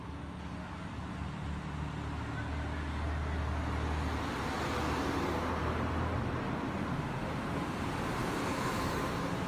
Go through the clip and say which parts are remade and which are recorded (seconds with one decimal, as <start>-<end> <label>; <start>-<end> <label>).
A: 0.0-8.5 recorded; 8.5-9.1 remade; 9.1-9.5 recorded